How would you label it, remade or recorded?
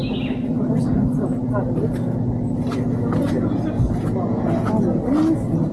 recorded